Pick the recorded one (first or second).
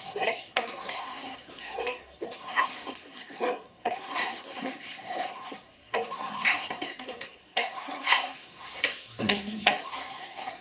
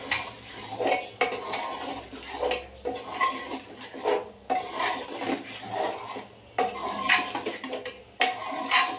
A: second